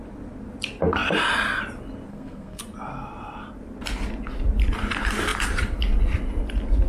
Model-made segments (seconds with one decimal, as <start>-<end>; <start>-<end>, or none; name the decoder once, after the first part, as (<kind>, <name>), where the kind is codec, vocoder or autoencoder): 2.1-2.6 (codec, SNAC)